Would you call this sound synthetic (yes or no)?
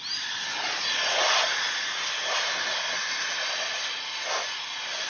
no